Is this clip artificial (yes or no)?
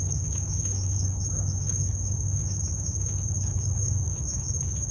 yes